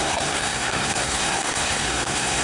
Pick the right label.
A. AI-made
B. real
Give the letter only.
A